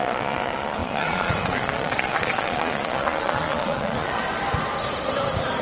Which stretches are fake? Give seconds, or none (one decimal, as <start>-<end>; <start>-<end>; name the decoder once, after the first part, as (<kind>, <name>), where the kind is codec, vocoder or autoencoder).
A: 0.0-4.2 (vocoder, Vocos)